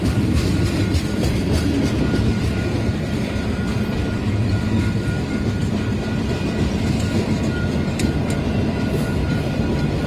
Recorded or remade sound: remade